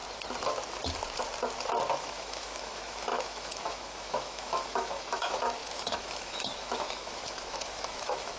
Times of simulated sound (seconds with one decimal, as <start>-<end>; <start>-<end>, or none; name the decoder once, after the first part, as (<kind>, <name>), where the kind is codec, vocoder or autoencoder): 2.0-8.4 (autoencoder, DAC-VAE)